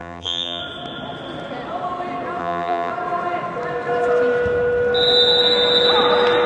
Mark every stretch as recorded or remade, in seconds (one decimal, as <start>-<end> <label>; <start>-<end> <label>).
0.0-0.6 remade; 0.6-2.4 recorded; 2.4-2.9 remade; 2.9-6.5 recorded